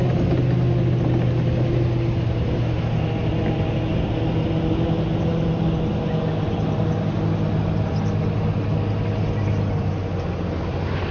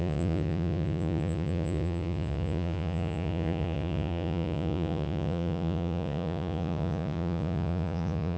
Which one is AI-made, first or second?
second